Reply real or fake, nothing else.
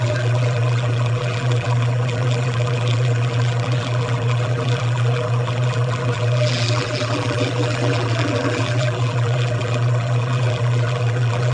fake